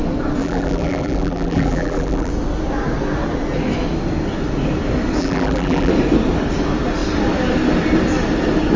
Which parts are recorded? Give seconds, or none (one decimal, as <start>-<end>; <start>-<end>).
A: 0.0-0.4; 2.3-5.2; 5.9-8.8

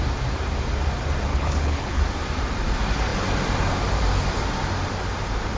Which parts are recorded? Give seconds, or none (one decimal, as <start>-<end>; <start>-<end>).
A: 0.0-1.3; 2.0-5.6

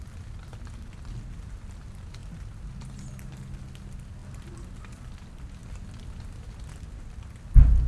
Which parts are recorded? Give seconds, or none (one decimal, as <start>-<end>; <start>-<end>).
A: 0.0-7.9

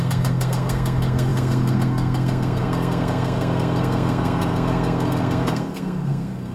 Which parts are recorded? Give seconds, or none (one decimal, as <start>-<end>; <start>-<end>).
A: none